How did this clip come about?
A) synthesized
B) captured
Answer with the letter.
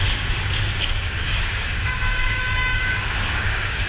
A